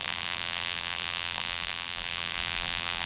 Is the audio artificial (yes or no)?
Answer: yes